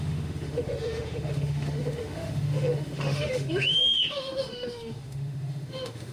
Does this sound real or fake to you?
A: fake